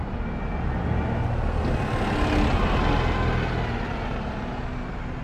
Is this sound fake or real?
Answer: real